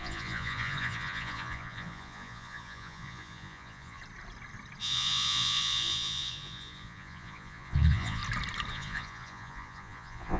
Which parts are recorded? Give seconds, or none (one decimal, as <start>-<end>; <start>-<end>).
4.0-4.8; 8.2-8.7